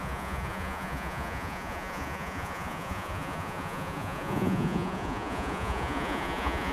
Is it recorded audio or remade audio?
remade